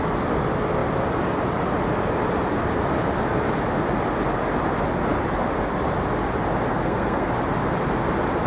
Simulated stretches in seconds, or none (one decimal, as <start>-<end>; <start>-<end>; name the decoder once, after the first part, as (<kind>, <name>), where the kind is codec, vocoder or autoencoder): 6.7-7.3 (codec, SNAC)